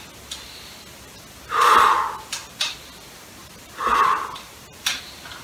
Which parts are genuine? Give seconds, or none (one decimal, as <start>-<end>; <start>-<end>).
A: 0.0-2.4; 5.0-5.4